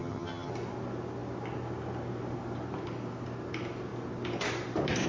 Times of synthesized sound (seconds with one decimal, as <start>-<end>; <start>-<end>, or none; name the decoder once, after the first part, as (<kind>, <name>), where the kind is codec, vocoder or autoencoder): 0.0-0.5 (vocoder, HiFi-GAN)